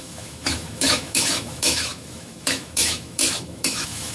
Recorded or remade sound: remade